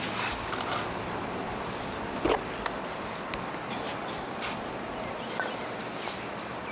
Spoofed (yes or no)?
no